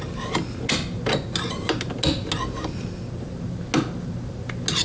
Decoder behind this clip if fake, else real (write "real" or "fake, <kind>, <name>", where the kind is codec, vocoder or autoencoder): real